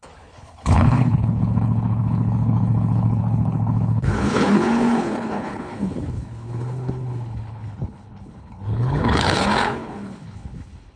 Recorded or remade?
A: remade